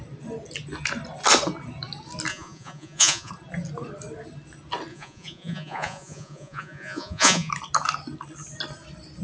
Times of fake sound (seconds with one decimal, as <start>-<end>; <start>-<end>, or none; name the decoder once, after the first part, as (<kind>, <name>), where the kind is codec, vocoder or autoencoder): 2.3-3.3 (vocoder, Vocos); 4.9-7.5

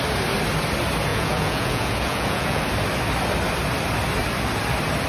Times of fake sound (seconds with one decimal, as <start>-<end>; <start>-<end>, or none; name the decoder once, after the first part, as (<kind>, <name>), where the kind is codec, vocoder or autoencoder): 1.1-2.6 (vocoder, Vocos)

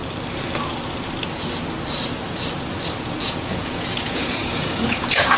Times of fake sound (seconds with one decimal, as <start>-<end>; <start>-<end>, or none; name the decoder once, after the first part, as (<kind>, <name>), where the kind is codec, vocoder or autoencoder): 3.2-5.4 (vocoder, Vocos)

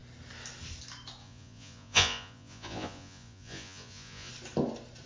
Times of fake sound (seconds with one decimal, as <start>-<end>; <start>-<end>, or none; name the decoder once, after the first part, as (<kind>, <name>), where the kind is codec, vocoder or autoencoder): 1.2-4.3 (vocoder, Vocos)

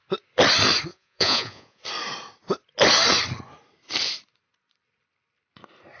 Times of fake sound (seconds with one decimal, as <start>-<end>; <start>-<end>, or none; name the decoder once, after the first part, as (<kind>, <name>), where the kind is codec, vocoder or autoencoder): 0.9-1.8 (vocoder, Vocos)

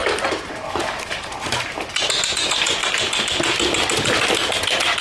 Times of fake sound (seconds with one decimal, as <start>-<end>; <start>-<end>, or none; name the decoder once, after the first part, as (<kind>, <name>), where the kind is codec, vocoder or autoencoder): 2.3-2.8 (vocoder, Vocos)